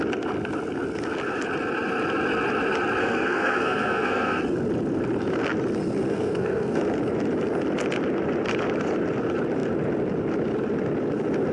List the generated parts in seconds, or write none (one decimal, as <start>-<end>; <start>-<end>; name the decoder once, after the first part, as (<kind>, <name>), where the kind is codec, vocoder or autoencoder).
3.0-4.4 (codec, SNAC); 6.1-6.8